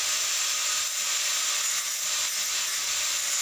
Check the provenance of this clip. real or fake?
real